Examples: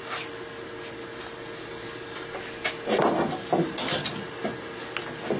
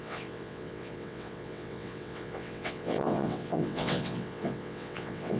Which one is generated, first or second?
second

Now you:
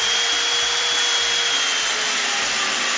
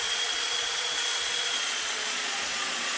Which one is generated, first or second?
second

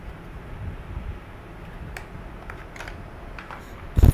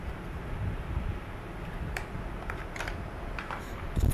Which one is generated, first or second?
second